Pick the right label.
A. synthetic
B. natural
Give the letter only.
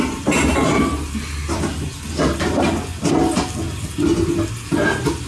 B